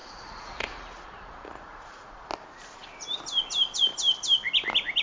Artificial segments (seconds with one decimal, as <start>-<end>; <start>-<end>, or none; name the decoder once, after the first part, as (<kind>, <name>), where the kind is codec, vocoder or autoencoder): 0.0-2.3 (vocoder, Vocos)